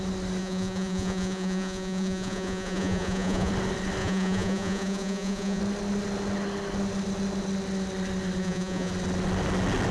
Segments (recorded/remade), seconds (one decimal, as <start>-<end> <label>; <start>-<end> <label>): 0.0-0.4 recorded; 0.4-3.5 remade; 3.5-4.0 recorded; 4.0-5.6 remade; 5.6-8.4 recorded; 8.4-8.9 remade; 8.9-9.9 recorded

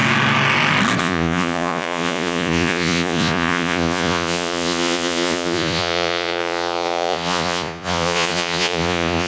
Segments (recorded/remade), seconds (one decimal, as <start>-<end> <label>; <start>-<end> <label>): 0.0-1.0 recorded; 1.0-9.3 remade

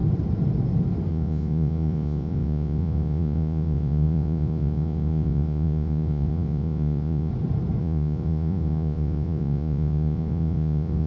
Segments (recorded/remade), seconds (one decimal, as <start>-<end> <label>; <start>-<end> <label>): 0.0-1.1 recorded; 1.1-7.3 remade; 7.3-7.8 recorded; 7.8-11.1 remade